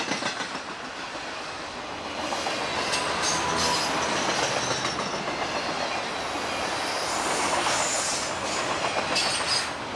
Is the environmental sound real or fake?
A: real